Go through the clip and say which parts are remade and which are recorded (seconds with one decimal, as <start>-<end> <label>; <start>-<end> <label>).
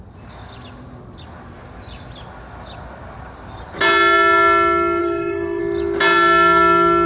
0.0-5.0 recorded; 5.0-5.6 remade; 5.6-7.1 recorded